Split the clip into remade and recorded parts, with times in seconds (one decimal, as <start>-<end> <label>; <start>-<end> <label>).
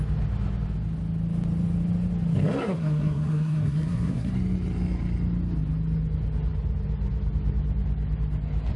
0.0-2.6 recorded; 2.6-4.3 remade; 4.3-8.8 recorded